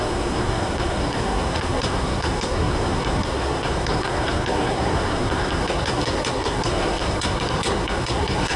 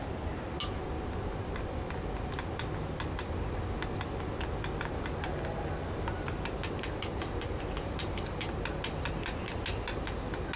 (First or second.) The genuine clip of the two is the second